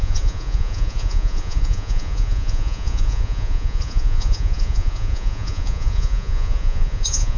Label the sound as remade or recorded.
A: remade